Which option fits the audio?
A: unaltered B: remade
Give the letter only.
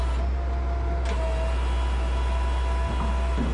A